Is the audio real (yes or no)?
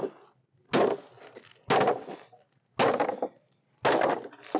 yes